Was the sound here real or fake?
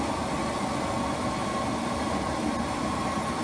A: real